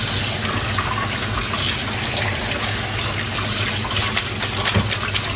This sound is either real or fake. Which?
real